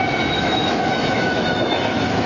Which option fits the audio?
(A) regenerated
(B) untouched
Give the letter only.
A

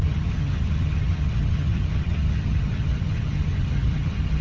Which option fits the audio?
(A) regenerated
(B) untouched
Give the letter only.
A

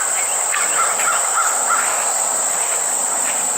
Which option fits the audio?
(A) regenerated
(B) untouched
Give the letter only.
A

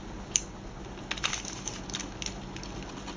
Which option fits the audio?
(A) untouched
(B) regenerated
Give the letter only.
A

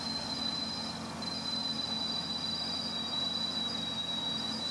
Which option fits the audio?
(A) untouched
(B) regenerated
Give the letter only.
A